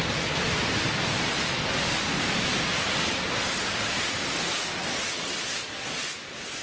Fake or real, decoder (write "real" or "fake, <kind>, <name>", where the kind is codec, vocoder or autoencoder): real